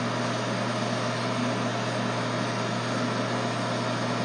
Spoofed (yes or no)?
no